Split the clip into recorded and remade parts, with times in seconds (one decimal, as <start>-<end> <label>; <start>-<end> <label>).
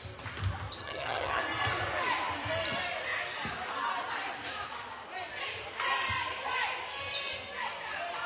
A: 0.0-0.8 recorded; 0.8-1.4 remade; 1.4-8.3 recorded